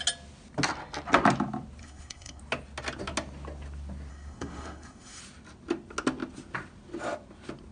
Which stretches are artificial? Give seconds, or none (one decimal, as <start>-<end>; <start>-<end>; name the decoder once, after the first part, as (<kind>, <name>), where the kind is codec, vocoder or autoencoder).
1.8-2.4 (codec, SNAC); 4.1-5.2